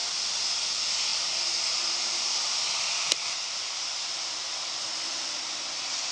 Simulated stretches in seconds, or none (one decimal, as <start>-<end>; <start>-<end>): 1.1-4.8